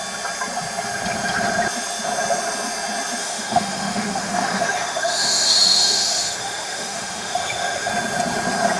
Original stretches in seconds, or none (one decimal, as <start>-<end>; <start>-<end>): 0.0-3.2; 7.9-8.8